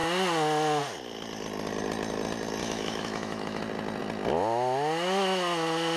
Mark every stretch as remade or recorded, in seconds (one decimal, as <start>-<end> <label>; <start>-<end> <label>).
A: 0.0-2.6 recorded; 2.6-3.6 remade; 3.6-6.0 recorded